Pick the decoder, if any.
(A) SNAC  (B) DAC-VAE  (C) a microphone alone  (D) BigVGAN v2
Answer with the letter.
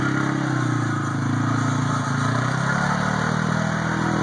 C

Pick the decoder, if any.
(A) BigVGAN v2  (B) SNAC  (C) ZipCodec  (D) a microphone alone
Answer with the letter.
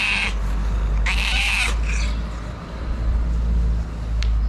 D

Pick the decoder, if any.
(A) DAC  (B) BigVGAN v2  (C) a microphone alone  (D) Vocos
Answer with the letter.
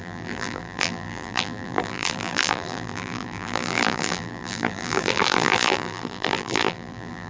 B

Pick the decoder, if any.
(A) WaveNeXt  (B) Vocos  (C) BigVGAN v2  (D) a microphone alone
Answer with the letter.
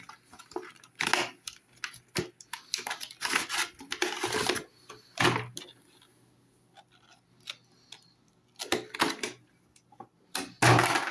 D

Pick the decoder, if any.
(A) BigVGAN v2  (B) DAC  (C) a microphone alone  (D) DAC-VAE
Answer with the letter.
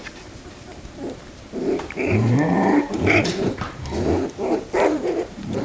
A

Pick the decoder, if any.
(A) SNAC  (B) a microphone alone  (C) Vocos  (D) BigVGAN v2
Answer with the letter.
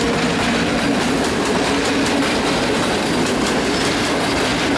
B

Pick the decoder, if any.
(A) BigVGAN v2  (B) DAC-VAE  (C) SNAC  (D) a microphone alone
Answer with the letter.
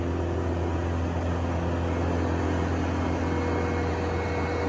D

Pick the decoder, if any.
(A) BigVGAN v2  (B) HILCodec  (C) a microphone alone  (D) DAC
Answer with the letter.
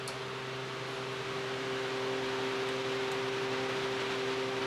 C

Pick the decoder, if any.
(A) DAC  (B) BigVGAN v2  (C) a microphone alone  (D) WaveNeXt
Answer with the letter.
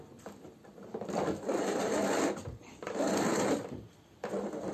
B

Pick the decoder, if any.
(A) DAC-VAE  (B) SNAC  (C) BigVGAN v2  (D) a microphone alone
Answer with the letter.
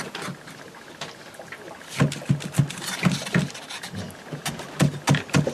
D